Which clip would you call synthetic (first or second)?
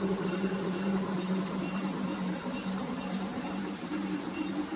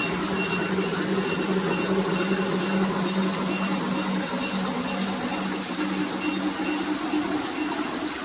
first